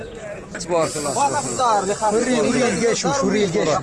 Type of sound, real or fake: real